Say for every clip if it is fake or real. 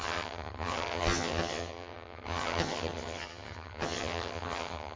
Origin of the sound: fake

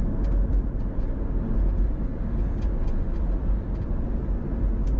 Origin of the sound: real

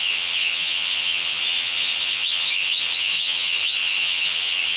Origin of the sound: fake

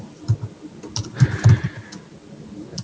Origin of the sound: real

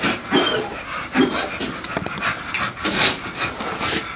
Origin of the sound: real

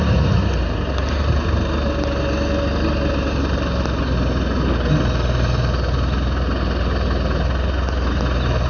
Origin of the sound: real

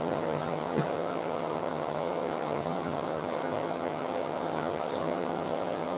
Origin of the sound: fake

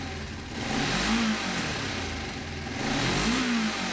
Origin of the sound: real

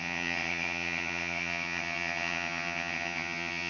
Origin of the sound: fake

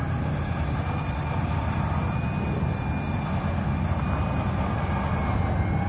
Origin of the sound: real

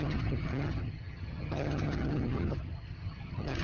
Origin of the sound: fake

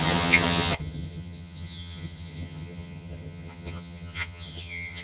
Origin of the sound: fake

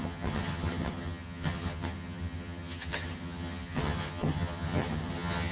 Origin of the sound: fake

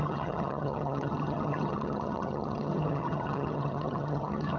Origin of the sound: fake